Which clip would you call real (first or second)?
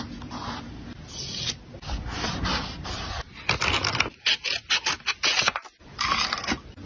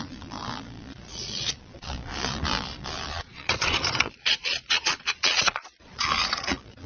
first